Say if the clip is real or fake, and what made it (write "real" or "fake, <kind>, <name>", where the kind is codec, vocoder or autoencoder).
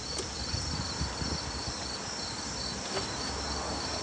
real